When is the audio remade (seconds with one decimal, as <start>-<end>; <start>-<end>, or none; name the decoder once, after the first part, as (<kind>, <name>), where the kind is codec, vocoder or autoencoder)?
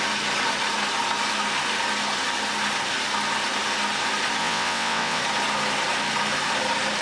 4.4-5.2 (vocoder, WaveNeXt)